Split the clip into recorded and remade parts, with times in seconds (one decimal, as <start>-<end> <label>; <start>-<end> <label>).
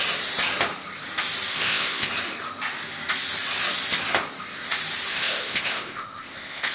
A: 0.0-1.5 recorded; 1.5-2.1 remade; 2.1-5.1 recorded; 5.1-6.7 remade